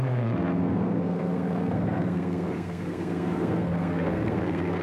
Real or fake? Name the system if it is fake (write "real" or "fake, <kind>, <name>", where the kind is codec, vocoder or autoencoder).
fake, codec, SNAC